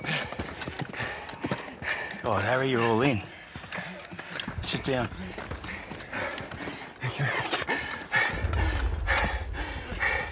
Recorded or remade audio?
recorded